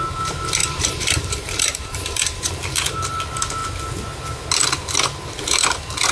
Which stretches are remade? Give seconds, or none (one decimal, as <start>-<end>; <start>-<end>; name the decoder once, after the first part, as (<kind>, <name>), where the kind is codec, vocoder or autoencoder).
0.6-3.1 (vocoder, BigVGAN v2)